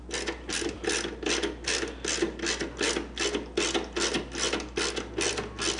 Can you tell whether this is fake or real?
real